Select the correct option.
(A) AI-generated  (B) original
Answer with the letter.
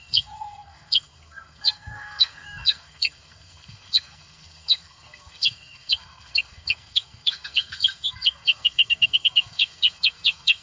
A